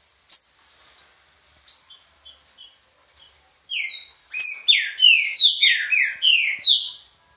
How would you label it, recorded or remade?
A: recorded